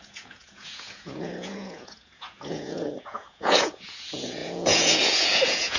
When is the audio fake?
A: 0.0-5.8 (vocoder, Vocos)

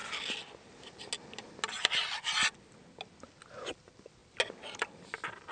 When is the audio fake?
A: none

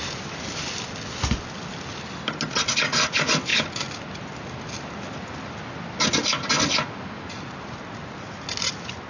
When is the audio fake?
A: none